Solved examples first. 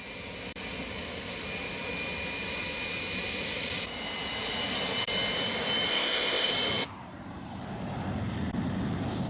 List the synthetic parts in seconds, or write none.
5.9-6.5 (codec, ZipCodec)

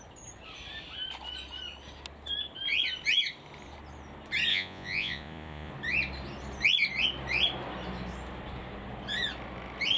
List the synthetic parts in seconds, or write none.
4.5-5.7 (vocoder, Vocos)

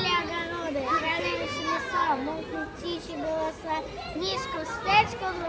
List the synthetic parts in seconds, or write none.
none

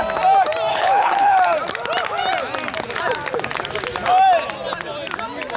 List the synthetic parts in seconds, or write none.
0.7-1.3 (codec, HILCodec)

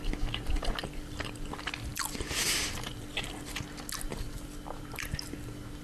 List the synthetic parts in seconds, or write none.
none

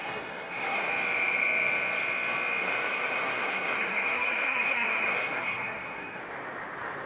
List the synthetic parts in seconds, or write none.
0.0-0.9 (codec, SNAC); 2.6-6.2

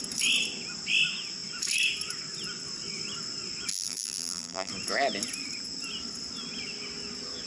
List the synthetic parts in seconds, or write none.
3.7-4.7 (vocoder, BigVGAN v2)

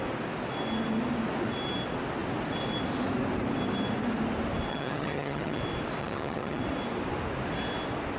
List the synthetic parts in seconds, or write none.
4.7-5.6 (vocoder, HiFi-GAN); 6.0-6.6